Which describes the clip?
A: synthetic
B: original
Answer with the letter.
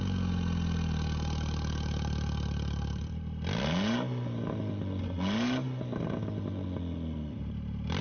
B